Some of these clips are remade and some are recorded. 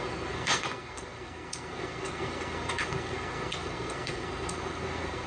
remade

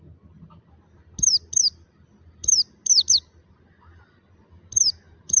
recorded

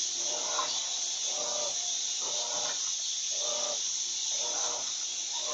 recorded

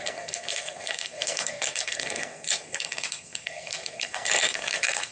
remade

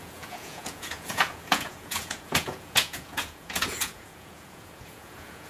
remade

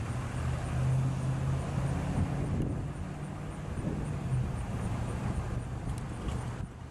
recorded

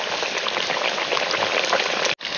recorded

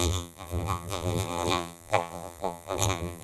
remade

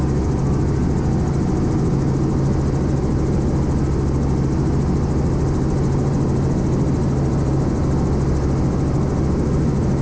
recorded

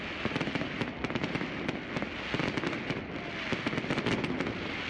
recorded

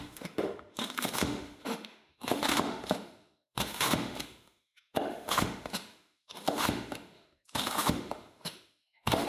remade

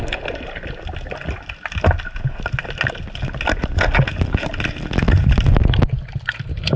recorded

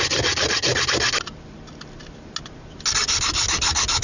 recorded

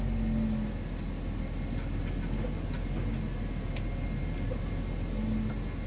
recorded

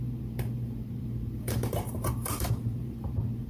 remade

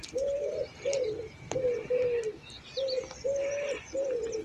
recorded